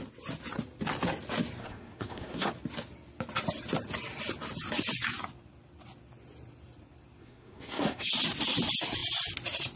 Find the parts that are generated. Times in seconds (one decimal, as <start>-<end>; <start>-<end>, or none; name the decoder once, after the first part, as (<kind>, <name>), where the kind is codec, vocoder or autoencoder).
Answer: 1.6-2.5 (codec, SNAC); 7.2-8.1

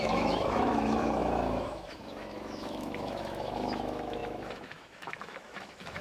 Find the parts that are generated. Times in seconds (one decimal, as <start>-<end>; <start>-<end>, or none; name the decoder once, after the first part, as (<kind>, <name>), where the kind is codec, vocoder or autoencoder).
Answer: 0.0-6.0 (autoencoder, DAC-VAE)

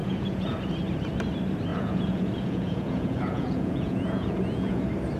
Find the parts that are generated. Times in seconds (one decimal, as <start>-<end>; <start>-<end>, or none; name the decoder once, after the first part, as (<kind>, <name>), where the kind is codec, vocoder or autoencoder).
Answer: 0.0-0.6 (vocoder, Vocos); 1.7-4.8

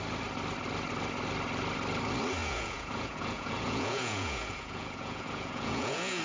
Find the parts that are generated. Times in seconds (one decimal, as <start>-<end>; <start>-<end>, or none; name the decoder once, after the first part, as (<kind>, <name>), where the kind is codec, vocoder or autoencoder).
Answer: 2.4-6.2 (vocoder, Vocos)

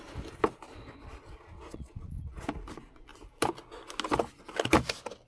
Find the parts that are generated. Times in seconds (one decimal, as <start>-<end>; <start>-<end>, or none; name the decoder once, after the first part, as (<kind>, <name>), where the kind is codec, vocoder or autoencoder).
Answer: 1.0-2.1 (vocoder, Vocos)

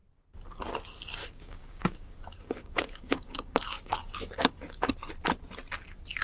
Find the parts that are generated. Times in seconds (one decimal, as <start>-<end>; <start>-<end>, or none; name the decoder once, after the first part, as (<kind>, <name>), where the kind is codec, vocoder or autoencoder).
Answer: 1.2-4.9 (codec, DAC)

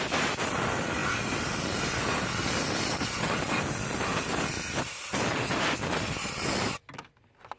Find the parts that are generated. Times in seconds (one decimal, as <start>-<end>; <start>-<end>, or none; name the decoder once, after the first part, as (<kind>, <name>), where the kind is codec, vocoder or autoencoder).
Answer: none